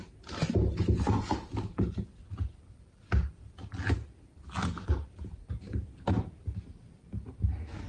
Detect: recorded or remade recorded